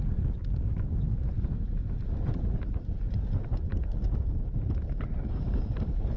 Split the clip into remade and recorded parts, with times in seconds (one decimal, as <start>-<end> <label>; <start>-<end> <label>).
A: 0.0-6.2 recorded

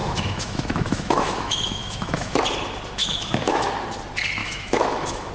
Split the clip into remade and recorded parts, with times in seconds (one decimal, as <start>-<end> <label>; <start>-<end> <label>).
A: 0.0-2.4 remade; 2.4-3.0 recorded; 3.0-3.7 remade; 3.7-4.4 recorded; 4.4-5.3 remade

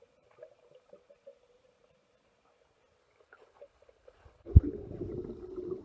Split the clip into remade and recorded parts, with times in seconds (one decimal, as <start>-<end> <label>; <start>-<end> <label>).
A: 0.0-3.0 recorded; 3.0-5.1 remade; 5.1-5.8 recorded

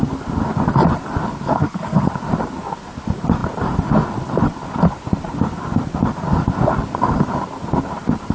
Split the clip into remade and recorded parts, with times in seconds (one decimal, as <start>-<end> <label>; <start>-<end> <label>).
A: 0.0-1.5 recorded; 1.5-2.1 remade; 2.1-8.3 recorded